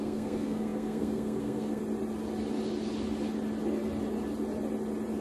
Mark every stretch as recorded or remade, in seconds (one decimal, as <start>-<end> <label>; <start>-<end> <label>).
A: 0.0-1.8 remade; 1.8-5.2 recorded